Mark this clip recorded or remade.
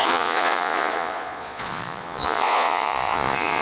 remade